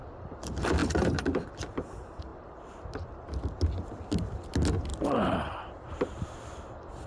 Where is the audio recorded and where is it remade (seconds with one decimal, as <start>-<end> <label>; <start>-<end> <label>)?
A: 0.0-0.8 recorded; 0.8-1.5 remade; 1.5-4.9 recorded; 4.9-6.4 remade; 6.4-7.1 recorded